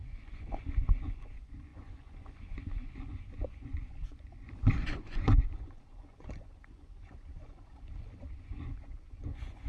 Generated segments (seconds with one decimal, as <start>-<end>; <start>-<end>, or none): 0.0-9.7